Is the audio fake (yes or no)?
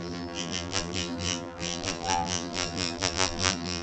yes